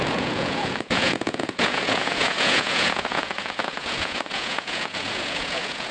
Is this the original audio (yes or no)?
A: no